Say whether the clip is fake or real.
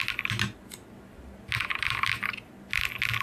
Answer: real